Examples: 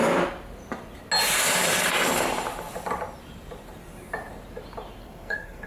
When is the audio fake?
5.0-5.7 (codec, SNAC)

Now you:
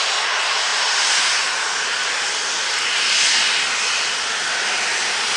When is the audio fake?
none

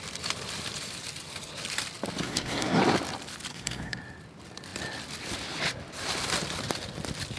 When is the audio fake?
2.2-2.8 (codec, SNAC); 3.5-4.0

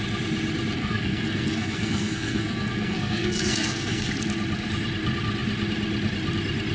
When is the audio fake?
0.8-4.1 (codec, SNAC)